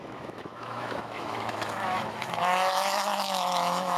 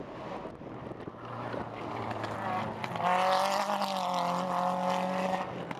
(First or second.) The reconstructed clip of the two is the first